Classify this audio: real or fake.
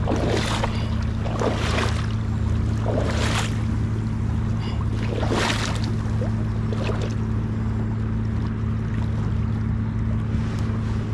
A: real